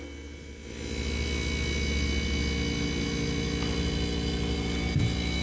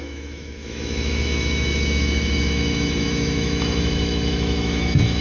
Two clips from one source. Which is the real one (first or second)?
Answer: first